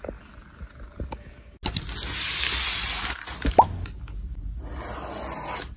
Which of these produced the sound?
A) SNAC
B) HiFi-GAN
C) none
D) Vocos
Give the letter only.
C